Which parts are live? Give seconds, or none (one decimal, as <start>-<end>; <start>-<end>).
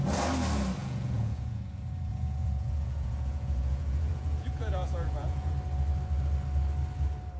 0.0-0.8; 1.6-2.1; 5.5-7.4